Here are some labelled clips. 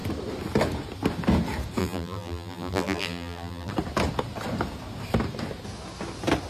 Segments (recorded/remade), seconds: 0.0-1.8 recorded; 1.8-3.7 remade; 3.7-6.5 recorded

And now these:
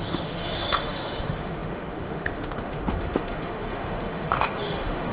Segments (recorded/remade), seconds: 0.0-5.1 remade

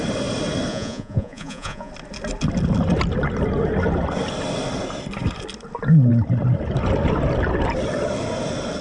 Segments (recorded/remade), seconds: 0.0-0.7 recorded; 0.7-1.9 remade; 1.9-8.8 recorded

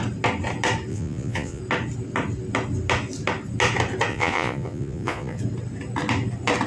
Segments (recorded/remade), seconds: 0.0-0.9 recorded; 0.9-1.6 remade; 1.6-4.1 recorded; 4.1-5.4 remade; 5.4-6.7 recorded

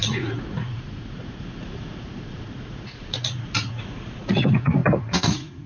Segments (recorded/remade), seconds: 0.0-5.7 remade